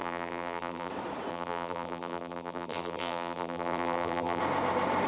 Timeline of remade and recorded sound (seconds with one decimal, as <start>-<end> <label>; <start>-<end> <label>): 0.0-0.9 remade; 0.9-1.3 recorded; 1.3-4.4 remade; 4.4-5.1 recorded

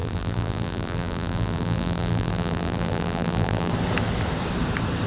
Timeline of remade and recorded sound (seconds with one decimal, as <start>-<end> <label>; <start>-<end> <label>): 0.0-3.7 remade; 3.7-5.1 recorded

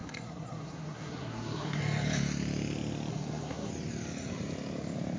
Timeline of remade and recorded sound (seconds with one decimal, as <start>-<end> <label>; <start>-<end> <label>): 0.0-1.8 remade; 1.8-3.1 recorded; 3.1-3.7 remade; 3.7-5.2 recorded

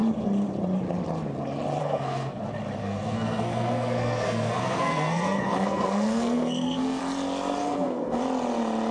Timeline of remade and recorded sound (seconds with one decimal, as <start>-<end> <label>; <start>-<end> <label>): 0.0-1.8 recorded; 1.8-2.4 remade; 2.4-2.8 recorded; 2.8-7.0 remade; 7.0-7.6 recorded; 7.6-8.2 remade; 8.2-8.9 recorded

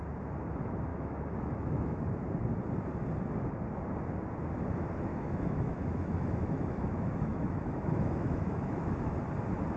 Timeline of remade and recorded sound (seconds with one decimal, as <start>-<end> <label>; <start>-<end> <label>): 0.0-0.9 recorded; 0.9-2.2 remade; 2.2-5.1 recorded; 5.1-9.2 remade; 9.2-9.8 recorded

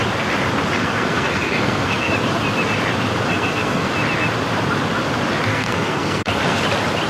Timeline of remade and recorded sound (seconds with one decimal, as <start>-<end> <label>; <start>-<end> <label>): 0.0-0.8 recorded; 0.8-2.1 remade; 2.1-3.3 recorded; 3.3-3.9 remade; 3.9-5.5 recorded; 5.5-6.6 remade; 6.6-7.1 recorded

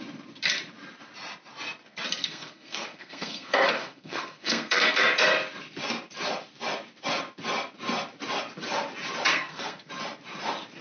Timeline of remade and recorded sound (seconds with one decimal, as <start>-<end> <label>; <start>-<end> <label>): 0.0-2.2 recorded; 2.2-5.0 remade; 5.0-9.3 recorded; 9.3-9.9 remade; 9.9-10.8 recorded

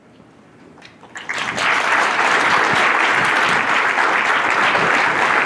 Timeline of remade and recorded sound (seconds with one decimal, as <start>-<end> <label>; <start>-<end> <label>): 0.0-3.3 remade; 3.3-5.5 recorded